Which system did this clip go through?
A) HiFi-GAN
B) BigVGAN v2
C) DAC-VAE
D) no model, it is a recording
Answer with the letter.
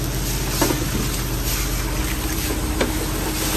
D